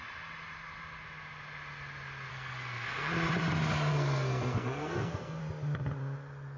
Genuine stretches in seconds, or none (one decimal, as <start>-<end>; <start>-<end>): 0.0-2.3; 3.1-3.9; 5.4-6.6